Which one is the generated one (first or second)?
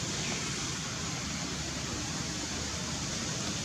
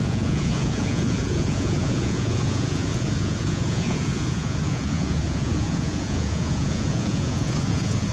second